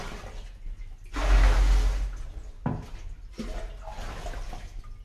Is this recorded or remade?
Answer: recorded